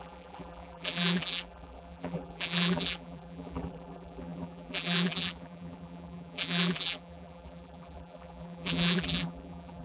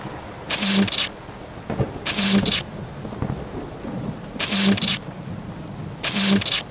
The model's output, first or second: first